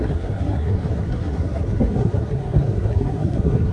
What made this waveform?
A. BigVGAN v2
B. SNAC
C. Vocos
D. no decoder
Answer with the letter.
B